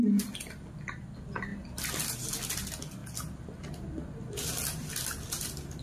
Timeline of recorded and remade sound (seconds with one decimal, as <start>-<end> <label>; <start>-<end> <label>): 0.0-5.8 recorded